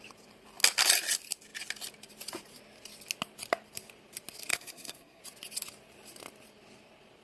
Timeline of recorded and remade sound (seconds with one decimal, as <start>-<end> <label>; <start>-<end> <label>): 0.0-4.5 recorded; 4.5-5.2 remade; 5.2-7.2 recorded